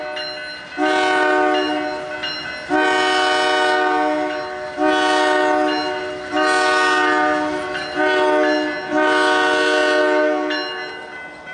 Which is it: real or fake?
real